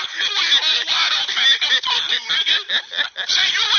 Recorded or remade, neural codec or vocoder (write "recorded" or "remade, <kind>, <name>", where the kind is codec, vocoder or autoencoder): recorded